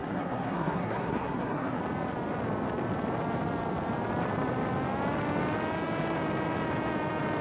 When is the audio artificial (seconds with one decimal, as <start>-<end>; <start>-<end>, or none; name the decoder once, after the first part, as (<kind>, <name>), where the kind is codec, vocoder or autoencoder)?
0.0-1.8 (codec, SNAC)